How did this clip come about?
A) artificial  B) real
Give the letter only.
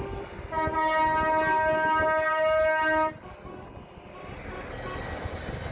B